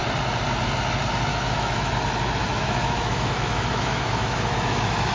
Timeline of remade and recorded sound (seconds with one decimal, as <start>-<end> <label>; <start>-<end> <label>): 0.0-1.3 recorded; 1.3-1.9 remade; 1.9-2.4 recorded; 2.4-5.1 remade

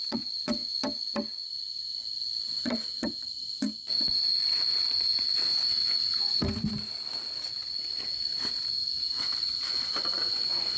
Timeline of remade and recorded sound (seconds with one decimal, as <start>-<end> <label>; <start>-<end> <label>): 0.0-0.6 remade; 0.6-1.9 recorded; 1.9-5.1 remade; 5.1-9.1 recorded; 9.1-10.8 remade

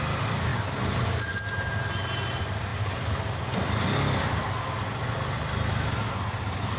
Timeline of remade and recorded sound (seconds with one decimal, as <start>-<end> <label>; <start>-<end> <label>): 0.0-6.8 recorded

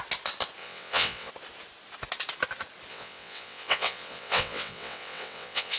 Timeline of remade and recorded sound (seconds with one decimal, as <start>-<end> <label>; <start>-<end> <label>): 0.0-0.6 recorded; 0.6-1.3 remade; 1.3-2.9 recorded; 2.9-5.8 remade

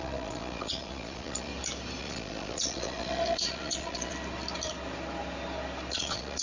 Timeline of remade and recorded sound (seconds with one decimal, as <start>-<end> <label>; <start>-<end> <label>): 0.0-1.5 remade; 1.5-2.0 recorded; 2.0-4.1 remade; 4.1-5.9 recorded; 5.9-6.4 remade